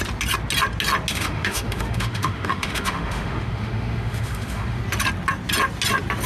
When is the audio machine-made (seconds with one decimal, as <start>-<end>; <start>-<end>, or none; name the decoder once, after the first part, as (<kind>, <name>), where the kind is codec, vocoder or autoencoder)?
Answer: 1.1-4.8 (autoencoder, DAC-VAE)

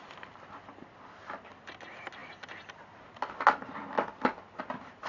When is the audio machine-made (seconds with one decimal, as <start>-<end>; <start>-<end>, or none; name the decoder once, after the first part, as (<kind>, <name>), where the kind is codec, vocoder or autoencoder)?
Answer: none

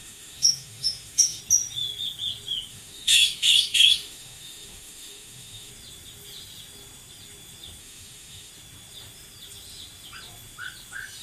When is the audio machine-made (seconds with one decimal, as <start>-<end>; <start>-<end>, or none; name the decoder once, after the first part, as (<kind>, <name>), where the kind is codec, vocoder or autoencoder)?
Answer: 0.0-1.4 (autoencoder, DAC-VAE); 2.7-5.7; 7.8-8.5

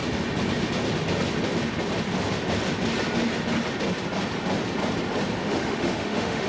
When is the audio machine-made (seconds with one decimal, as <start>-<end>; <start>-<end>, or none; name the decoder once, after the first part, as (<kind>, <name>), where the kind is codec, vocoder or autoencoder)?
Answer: 5.4-6.5 (autoencoder, DAC-VAE)

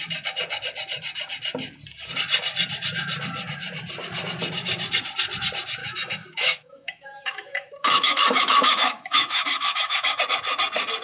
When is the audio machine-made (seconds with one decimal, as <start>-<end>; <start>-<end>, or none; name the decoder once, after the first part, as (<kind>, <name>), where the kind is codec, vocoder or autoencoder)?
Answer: 5.8-10.2 (autoencoder, DAC-VAE)

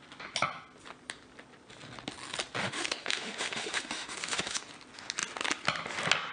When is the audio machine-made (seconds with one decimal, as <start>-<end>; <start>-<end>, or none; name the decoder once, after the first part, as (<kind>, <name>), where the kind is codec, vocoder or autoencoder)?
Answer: 2.6-4.6 (autoencoder, DAC-VAE)

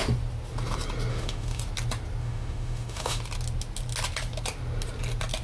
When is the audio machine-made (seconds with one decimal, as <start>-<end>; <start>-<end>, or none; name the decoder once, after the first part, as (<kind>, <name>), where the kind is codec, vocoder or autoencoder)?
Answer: 1.1-1.6 (autoencoder, DAC-VAE); 2.2-3.2

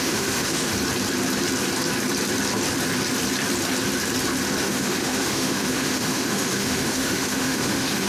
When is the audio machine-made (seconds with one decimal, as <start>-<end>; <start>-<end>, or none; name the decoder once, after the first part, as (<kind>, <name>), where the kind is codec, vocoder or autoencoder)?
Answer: 0.0-0.7 (autoencoder, DAC-VAE); 4.6-8.1